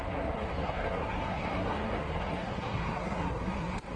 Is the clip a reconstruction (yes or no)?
yes